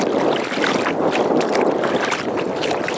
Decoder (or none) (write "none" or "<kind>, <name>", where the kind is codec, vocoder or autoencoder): none